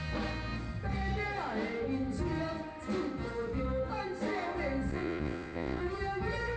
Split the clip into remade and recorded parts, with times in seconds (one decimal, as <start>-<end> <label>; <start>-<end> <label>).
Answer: 0.0-4.9 recorded; 4.9-5.8 remade; 5.8-6.6 recorded